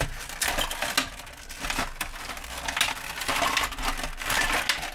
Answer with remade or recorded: recorded